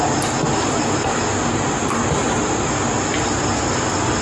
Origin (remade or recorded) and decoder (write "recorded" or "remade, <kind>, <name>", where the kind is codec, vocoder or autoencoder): recorded